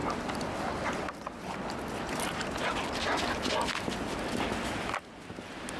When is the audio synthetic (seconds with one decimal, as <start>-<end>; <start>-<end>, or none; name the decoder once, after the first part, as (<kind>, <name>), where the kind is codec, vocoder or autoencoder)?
none